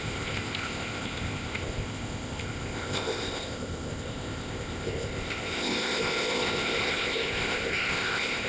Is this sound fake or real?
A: fake